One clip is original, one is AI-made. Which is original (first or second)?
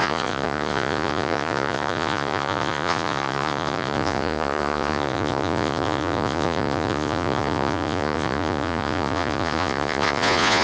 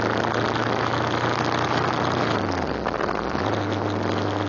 second